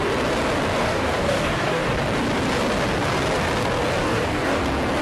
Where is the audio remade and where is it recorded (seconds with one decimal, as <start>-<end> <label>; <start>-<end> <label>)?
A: 0.0-0.8 recorded; 0.8-1.9 remade; 1.9-4.0 recorded; 4.0-4.6 remade; 4.6-5.0 recorded